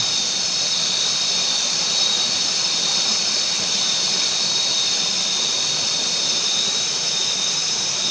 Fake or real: real